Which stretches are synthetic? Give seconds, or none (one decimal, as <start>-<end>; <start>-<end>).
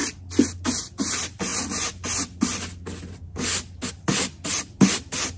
0.8-1.5; 3.9-5.4